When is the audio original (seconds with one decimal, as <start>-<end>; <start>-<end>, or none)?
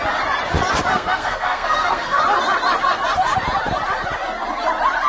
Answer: 0.0-0.9; 2.2-5.1